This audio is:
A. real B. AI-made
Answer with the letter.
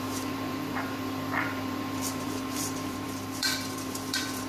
B